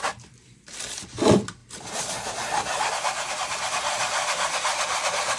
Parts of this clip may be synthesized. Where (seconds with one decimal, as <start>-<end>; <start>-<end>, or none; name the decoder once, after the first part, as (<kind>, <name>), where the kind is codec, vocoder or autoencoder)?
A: 0.0-1.6 (vocoder, BigVGAN v2); 2.9-5.4